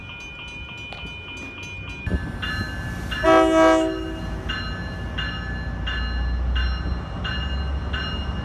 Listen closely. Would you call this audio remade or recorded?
recorded